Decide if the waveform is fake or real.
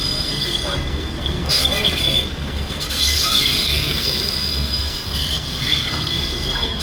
fake